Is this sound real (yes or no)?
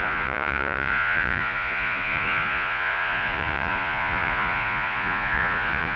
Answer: no